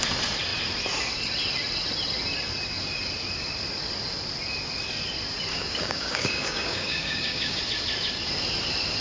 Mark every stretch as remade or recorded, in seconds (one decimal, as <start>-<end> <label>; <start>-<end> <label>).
0.0-5.5 recorded; 5.5-7.6 remade; 7.6-9.0 recorded